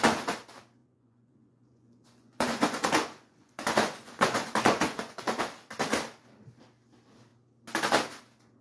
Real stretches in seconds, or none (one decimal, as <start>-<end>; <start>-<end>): 0.0-0.8; 5.4-8.6